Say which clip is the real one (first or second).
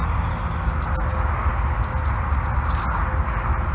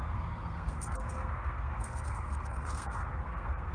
first